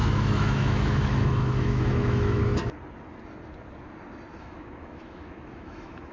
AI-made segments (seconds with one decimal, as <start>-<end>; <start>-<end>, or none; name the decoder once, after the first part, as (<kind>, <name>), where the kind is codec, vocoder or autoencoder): 0.0-2.4 (autoencoder, DAC-VAE); 4.4-6.1